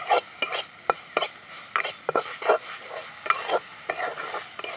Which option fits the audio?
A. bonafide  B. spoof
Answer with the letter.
A